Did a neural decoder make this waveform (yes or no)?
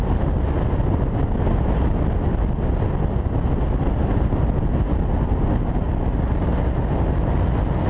no